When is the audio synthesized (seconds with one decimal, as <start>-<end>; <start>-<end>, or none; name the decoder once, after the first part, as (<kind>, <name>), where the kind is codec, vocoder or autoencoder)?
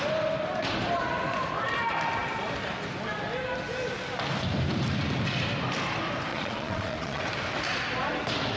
6.3-7.2 (vocoder, Vocos)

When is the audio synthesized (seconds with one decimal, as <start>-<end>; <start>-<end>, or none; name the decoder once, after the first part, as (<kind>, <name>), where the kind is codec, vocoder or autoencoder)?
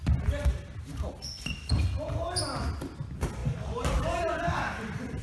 none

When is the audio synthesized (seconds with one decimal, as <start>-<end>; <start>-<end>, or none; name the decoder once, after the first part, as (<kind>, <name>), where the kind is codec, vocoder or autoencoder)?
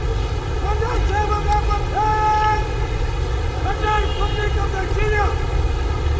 none